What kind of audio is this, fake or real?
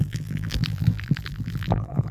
fake